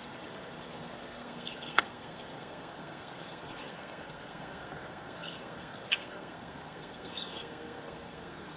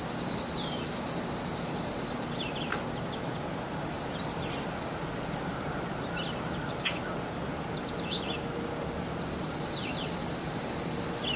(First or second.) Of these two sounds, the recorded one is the second